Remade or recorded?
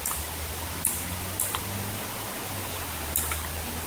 recorded